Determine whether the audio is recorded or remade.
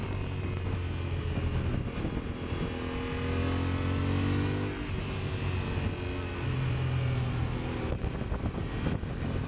recorded